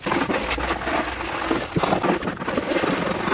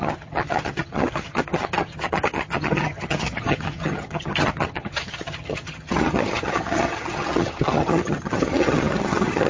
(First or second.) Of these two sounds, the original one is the first